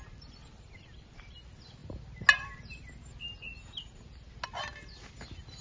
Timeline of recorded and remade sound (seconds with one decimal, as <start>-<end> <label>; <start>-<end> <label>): 0.0-5.6 recorded